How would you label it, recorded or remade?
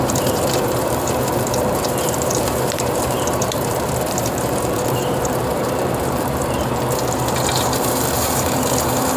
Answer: remade